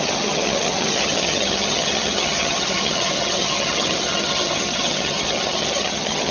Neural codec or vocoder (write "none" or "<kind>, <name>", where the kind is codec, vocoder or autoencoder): vocoder, HiFi-GAN